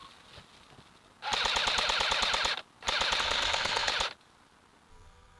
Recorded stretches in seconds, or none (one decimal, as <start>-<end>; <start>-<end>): 0.0-3.2; 3.9-4.9

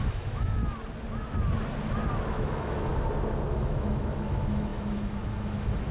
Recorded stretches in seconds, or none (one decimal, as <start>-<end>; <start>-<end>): 0.6-2.3; 2.9-3.5

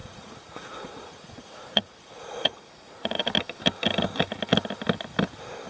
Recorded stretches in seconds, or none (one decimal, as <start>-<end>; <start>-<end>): 3.3-5.7

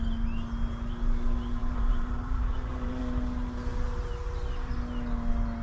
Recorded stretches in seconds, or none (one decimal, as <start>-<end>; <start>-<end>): 0.0-1.6; 3.0-3.7; 4.7-5.6

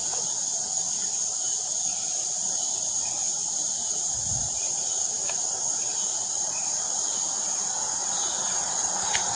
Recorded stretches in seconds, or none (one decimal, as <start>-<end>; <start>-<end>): 0.0-3.7; 4.3-6.1; 6.8-8.0; 8.8-9.4

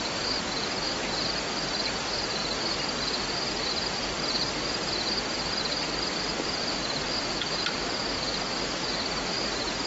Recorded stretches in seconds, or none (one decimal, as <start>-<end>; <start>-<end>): 0.0-9.9

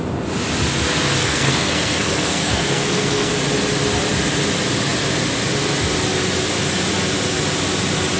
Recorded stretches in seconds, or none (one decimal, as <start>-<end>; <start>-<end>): 0.0-1.2; 3.3-8.2